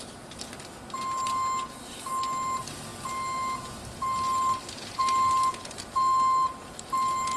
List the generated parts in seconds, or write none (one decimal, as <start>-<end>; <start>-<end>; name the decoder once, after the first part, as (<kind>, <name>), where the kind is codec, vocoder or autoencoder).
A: none

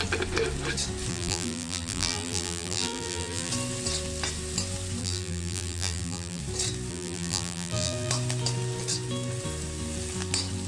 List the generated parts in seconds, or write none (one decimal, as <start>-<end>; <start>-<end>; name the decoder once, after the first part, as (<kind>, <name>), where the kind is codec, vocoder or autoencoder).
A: 1.1-3.5 (vocoder, BigVGAN v2); 5.0-6.4; 6.9-8.1

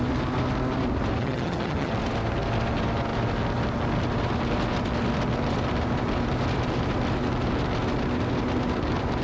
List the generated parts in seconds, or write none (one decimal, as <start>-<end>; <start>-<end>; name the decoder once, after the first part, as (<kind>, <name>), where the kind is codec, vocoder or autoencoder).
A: 1.2-1.9 (vocoder, HiFi-GAN)

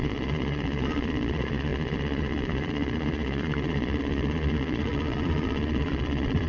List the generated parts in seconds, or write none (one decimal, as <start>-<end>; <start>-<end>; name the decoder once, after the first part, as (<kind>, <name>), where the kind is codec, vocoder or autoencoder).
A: 0.0-6.5 (vocoder, Vocos)

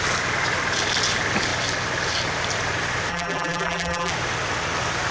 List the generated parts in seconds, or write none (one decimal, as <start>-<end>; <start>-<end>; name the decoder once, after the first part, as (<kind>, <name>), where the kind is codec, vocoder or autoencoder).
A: 3.1-4.1 (vocoder, BigVGAN v2)

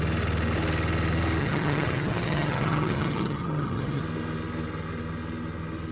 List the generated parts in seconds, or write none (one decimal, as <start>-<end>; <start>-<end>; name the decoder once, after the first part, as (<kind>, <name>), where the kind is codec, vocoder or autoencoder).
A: 1.4-4.0 (vocoder, HiFi-GAN)

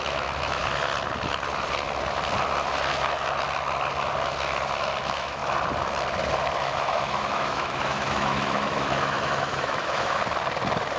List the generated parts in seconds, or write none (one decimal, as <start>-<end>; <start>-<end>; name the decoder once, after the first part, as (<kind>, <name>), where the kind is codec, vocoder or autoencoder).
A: 0.0-0.6 (autoencoder, DAC-VAE); 5.0-5.4; 6.6-10.2